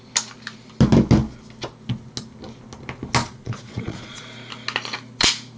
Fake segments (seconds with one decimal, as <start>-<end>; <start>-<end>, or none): 3.2-4.2